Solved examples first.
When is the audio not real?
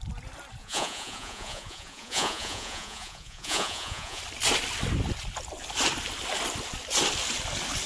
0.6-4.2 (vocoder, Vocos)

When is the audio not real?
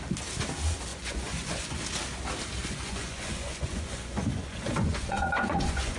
0.9-1.8 (vocoder, Vocos); 2.6-6.0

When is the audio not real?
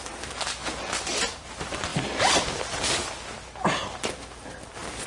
none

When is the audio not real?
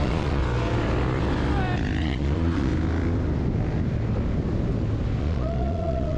0.0-0.4 (vocoder, Vocos); 2.0-2.7; 5.2-6.2